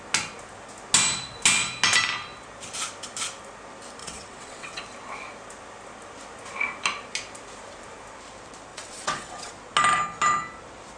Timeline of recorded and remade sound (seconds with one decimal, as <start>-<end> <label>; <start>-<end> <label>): 0.0-4.0 recorded; 4.0-4.8 remade; 4.8-8.7 recorded; 8.7-9.5 remade; 9.5-11.0 recorded